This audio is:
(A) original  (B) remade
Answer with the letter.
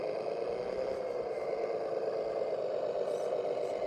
A